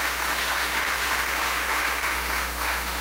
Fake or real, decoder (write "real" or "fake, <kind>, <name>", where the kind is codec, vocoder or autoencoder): fake, autoencoder, DAC-VAE